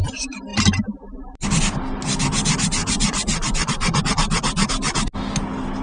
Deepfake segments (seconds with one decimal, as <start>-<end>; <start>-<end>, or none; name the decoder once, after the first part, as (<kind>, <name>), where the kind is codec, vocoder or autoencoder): 2.8-4.0 (vocoder, Vocos)